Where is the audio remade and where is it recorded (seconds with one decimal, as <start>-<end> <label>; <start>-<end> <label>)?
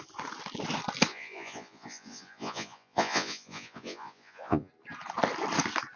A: 0.0-1.1 recorded; 1.1-4.7 remade; 4.7-6.0 recorded